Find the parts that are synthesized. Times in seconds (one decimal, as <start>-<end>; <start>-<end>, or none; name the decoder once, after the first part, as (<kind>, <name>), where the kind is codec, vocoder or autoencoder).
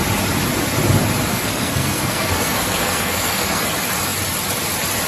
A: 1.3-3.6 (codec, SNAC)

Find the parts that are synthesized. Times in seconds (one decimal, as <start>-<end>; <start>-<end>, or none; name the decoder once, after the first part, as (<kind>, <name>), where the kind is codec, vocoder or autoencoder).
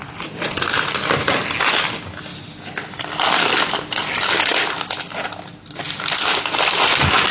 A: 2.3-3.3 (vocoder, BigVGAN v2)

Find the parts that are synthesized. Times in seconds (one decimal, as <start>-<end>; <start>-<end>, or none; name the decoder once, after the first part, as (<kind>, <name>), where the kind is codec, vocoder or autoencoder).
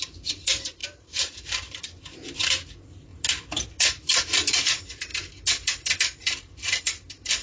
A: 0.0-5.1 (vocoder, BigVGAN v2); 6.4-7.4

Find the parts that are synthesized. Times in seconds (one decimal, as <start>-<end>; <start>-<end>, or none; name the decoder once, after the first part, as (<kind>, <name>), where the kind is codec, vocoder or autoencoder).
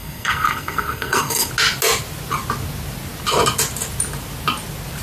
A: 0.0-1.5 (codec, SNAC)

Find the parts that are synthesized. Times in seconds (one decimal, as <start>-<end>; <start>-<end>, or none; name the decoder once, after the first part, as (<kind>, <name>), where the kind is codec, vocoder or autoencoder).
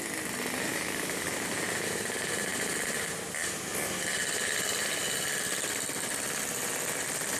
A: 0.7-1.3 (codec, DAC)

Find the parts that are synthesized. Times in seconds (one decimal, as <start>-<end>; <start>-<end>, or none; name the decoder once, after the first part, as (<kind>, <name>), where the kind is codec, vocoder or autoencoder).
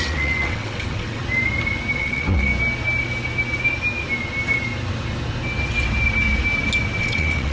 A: 0.0-1.2 (vocoder, WaveNeXt); 2.0-2.5; 7.0-7.5